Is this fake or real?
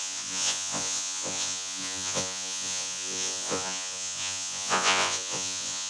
fake